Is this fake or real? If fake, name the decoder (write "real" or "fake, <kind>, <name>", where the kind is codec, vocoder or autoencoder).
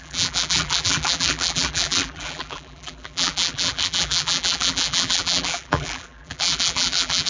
fake, vocoder, BigVGAN v2